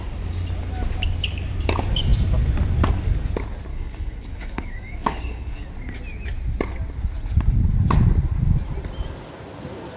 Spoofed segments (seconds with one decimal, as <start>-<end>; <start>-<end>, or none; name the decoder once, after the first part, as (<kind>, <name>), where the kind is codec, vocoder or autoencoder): 3.7-5.7 (codec, DAC)